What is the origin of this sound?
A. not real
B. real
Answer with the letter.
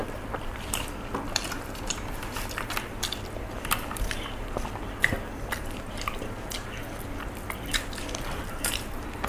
A